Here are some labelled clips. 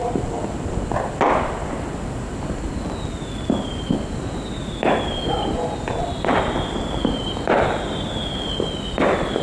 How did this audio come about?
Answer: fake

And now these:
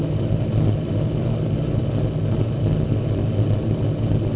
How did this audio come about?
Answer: real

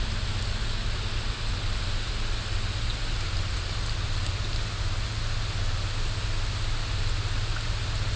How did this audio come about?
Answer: real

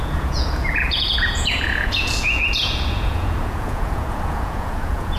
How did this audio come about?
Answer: fake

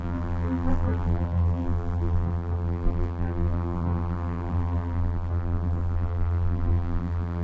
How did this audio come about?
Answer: fake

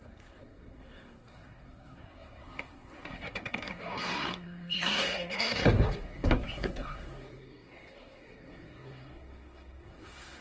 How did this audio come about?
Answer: fake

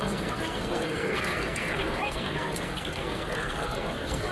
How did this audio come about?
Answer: fake